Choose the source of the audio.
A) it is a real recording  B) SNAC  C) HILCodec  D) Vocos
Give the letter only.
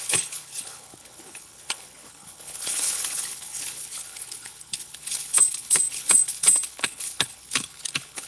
C